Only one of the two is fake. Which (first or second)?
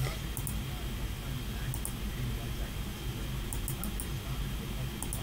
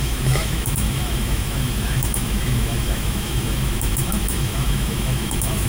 second